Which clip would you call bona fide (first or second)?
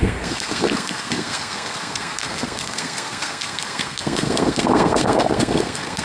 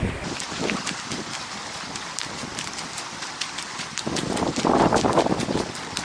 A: second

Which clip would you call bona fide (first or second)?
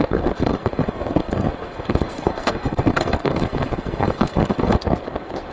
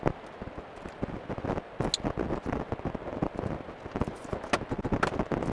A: second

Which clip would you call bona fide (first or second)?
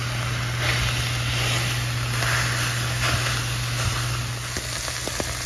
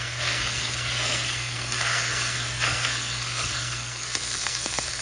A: first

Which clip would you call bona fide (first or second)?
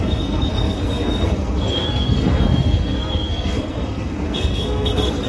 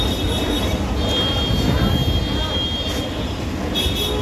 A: second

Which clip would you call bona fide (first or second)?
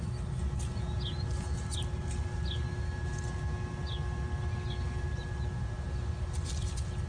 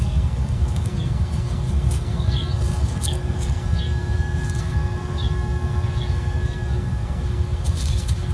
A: first